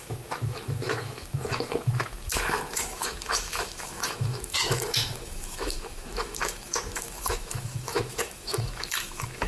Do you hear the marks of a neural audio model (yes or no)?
yes